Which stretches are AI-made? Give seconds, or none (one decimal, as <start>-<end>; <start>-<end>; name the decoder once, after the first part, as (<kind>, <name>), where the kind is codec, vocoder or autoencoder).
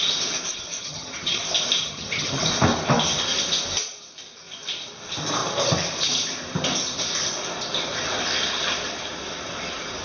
0.8-1.4 (vocoder, HiFi-GAN); 1.8-2.4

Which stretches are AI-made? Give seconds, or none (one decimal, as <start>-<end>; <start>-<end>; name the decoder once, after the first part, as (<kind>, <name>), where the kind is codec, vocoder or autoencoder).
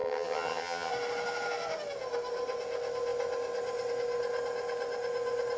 0.0-0.9 (vocoder, HiFi-GAN)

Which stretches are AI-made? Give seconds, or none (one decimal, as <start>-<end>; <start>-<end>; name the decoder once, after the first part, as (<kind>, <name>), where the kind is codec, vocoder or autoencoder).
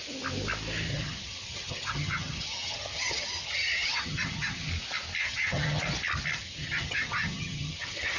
0.9-4.7 (vocoder, HiFi-GAN); 5.2-5.8; 6.4-8.2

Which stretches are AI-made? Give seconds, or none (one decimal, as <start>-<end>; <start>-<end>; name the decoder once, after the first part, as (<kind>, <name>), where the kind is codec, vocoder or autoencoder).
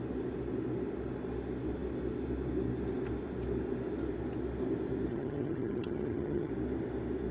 5.1-6.5 (vocoder, HiFi-GAN)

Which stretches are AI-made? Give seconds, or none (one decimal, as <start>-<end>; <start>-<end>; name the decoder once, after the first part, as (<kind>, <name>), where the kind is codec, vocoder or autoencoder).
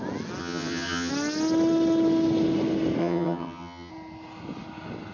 0.4-1.1 (vocoder, HiFi-GAN); 3.0-3.9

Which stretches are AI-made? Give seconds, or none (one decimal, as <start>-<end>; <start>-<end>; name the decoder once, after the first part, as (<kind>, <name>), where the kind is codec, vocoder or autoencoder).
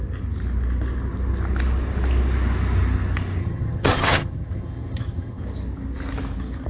3.4-5.4 (vocoder, HiFi-GAN)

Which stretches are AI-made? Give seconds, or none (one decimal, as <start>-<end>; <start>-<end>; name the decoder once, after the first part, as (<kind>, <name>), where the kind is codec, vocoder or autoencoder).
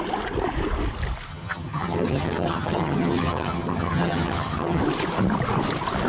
1.3-4.8 (vocoder, HiFi-GAN)